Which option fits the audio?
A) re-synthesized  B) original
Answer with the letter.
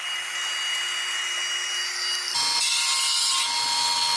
B